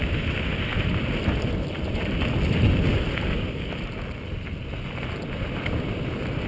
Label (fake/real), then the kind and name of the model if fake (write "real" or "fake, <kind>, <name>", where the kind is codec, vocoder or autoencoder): real